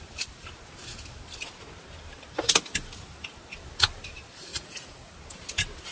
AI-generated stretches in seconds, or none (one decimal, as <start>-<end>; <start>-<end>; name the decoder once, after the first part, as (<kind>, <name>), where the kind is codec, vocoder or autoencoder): 4.5-5.1 (vocoder, Vocos)